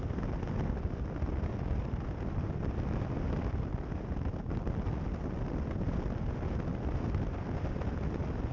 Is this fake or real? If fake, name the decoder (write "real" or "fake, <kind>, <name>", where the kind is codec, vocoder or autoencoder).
real